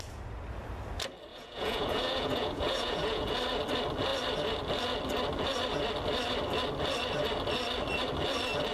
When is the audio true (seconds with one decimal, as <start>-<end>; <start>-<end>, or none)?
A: 0.0-1.3; 3.3-8.7

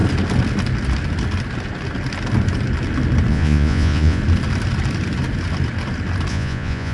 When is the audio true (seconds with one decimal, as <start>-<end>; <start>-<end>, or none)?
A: 0.0-3.3; 4.2-6.3